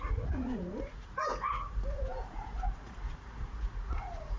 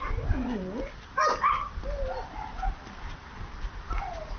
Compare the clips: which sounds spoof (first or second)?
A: first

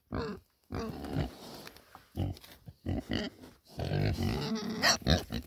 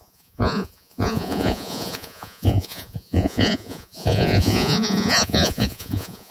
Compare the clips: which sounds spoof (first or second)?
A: second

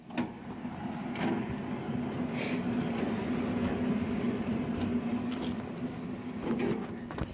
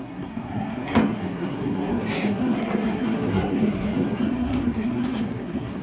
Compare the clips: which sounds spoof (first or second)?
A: second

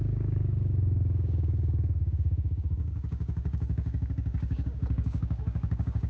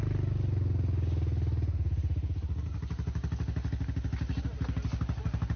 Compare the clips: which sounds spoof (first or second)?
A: first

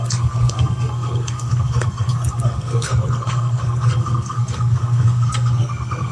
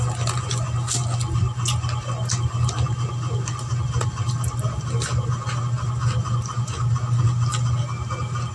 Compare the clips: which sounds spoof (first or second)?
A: first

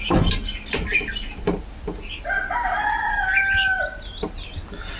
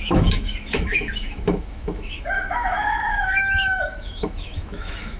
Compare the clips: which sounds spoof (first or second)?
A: second